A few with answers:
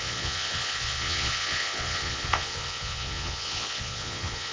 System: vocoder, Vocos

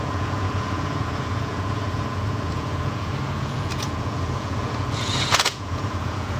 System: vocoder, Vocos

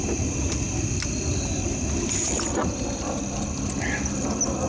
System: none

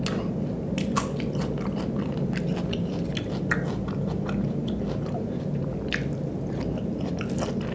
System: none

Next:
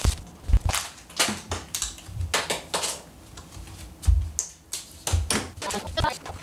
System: none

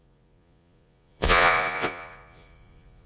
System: vocoder, Vocos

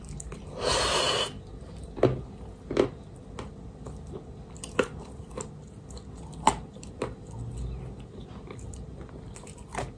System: none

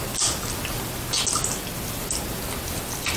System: none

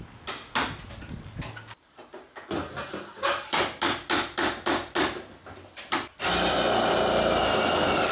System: none